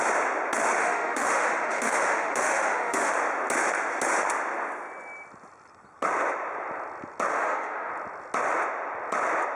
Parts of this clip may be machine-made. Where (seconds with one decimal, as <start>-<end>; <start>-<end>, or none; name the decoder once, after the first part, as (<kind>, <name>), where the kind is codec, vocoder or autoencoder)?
0.8-3.1 (autoencoder, DAC-VAE); 7.3-7.9